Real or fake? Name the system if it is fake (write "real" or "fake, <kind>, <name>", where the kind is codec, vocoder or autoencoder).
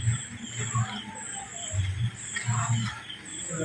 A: real